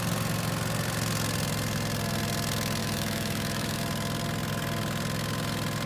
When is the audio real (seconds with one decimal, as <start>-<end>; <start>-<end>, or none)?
0.0-2.8; 3.8-5.9